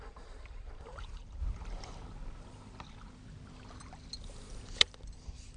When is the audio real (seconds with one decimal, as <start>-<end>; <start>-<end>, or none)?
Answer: 1.4-4.8